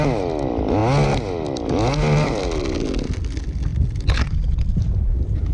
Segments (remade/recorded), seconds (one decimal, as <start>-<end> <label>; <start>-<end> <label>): 0.0-5.5 recorded